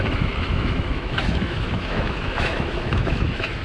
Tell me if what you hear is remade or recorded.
remade